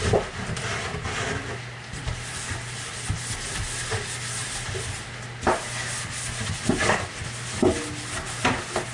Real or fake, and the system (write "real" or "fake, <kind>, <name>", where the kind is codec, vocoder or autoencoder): real